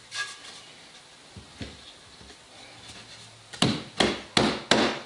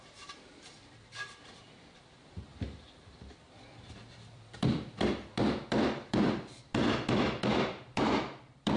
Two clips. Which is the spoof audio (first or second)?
second